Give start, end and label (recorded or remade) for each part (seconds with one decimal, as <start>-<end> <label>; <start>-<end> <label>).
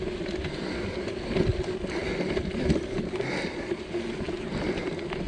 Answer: 0.0-5.3 recorded